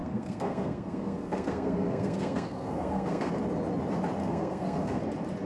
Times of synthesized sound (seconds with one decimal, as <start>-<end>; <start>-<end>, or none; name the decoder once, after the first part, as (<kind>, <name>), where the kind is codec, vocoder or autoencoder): 0.0-3.3 (codec, SNAC); 4.2-5.0